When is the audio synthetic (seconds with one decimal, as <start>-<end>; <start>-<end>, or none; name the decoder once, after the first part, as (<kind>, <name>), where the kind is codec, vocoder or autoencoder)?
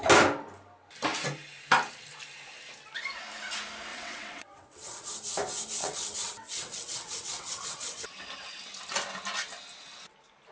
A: 3.9-5.1 (vocoder, WaveNeXt); 5.8-8.1